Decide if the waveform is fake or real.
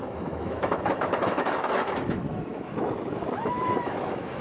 fake